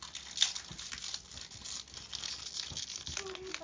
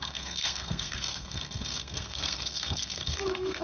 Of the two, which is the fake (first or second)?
second